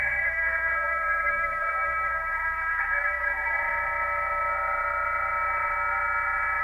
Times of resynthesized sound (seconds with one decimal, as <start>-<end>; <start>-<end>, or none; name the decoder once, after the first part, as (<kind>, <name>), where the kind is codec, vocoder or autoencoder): 0.0-3.6 (codec, SNAC)